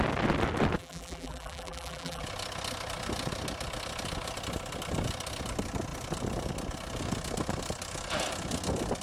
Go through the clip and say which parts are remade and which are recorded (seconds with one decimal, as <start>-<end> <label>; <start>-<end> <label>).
0.0-0.8 recorded; 0.8-2.2 remade; 2.2-9.0 recorded